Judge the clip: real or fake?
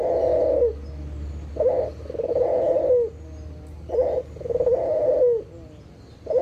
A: real